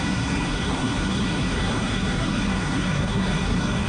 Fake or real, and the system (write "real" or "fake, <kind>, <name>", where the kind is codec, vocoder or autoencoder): fake, codec, SNAC